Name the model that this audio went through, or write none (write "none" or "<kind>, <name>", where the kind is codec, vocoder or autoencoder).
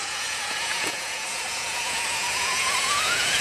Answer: vocoder, Vocos